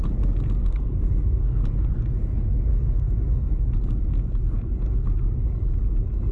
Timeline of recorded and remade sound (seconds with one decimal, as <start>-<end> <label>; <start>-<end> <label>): 0.0-0.6 recorded; 0.6-1.6 remade; 1.6-2.7 recorded; 2.7-3.5 remade; 3.5-6.3 recorded